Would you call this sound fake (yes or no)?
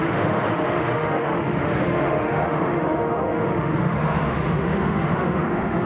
yes